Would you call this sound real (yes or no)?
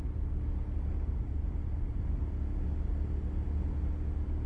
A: yes